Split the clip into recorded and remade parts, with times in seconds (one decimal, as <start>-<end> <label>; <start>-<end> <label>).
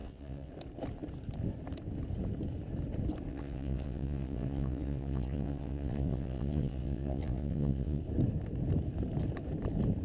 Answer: 0.0-0.5 remade; 0.5-3.3 recorded; 3.3-8.0 remade; 8.0-10.0 recorded